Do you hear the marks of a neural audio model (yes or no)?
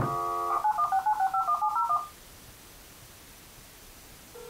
no